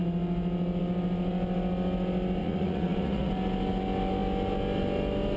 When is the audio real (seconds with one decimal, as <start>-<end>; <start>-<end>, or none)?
0.0-2.4; 3.3-5.4